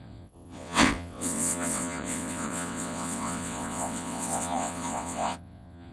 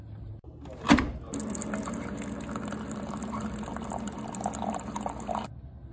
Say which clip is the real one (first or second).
second